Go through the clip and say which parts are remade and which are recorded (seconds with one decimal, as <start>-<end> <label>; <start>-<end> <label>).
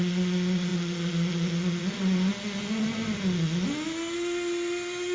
0.0-5.1 recorded